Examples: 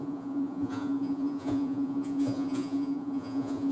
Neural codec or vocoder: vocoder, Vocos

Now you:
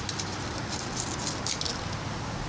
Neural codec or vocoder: none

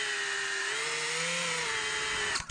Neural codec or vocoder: none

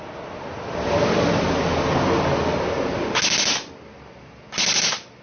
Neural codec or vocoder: none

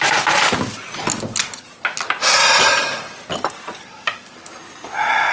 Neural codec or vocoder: none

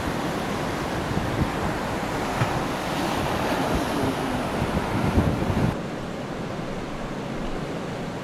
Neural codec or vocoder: none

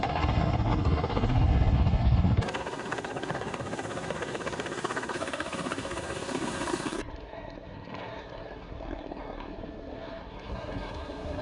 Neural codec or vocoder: codec, SNAC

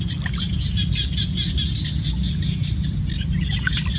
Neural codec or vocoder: none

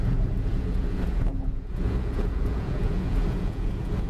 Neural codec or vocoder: vocoder, Vocos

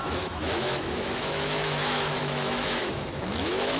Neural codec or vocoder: autoencoder, DAC-VAE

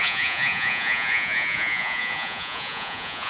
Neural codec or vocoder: vocoder, Vocos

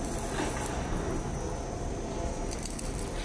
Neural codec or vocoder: none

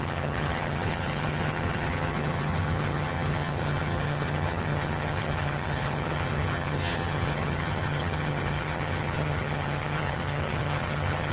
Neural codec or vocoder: vocoder, HiFi-GAN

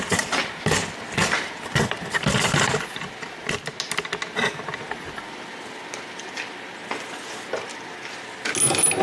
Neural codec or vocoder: none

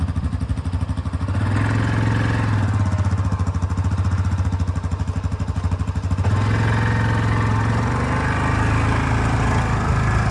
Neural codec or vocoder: none